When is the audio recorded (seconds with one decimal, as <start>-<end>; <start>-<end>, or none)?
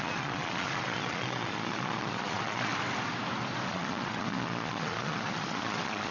2.7-3.7